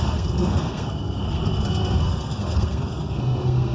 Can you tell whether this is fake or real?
fake